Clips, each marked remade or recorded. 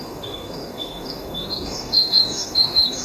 remade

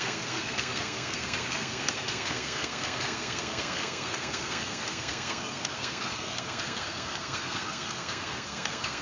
remade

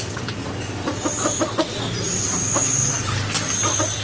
recorded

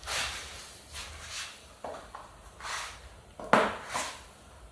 recorded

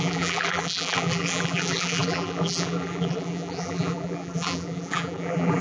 remade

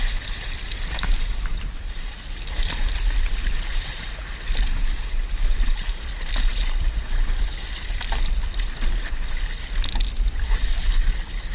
remade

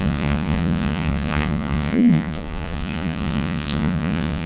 remade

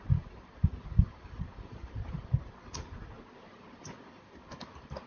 recorded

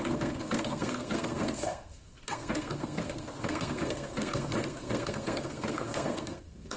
remade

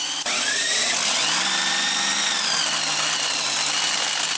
recorded